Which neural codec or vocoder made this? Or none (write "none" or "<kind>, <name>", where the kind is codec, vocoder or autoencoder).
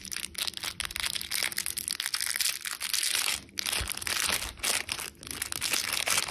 none